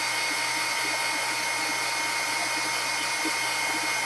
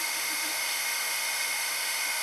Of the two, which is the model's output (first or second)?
second